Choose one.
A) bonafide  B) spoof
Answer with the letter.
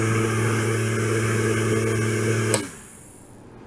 A